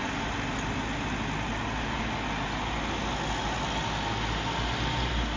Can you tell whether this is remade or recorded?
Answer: recorded